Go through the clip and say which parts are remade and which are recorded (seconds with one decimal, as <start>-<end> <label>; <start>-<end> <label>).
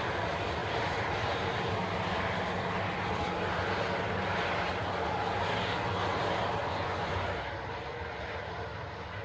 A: 0.0-6.6 recorded; 6.6-7.3 remade; 7.3-9.2 recorded